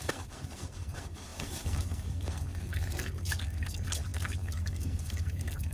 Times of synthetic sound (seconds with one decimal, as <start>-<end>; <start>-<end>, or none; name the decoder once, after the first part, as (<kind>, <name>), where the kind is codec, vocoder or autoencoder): 0.0-5.7 (codec, SNAC)